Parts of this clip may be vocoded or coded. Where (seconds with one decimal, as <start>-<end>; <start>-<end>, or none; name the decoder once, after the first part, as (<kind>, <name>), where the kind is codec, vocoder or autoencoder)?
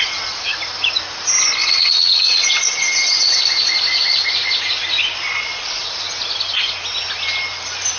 1.6-3.4 (vocoder, WaveNeXt)